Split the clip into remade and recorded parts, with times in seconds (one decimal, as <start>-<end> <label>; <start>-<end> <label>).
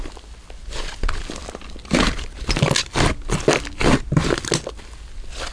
0.0-5.5 recorded